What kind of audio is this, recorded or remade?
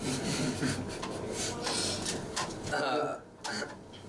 recorded